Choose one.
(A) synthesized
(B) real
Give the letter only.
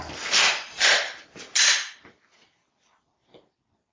B